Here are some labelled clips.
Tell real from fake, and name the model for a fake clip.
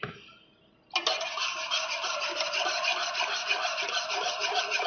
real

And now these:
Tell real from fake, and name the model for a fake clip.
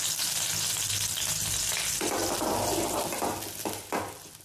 real